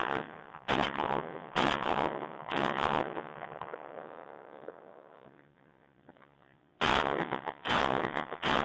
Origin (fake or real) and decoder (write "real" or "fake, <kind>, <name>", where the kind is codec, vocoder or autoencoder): fake, vocoder, WaveNeXt